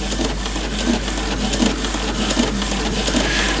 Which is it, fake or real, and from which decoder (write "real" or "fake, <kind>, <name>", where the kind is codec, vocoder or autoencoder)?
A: fake, vocoder, BigVGAN v2